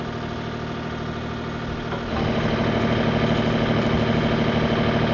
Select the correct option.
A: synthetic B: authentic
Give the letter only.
B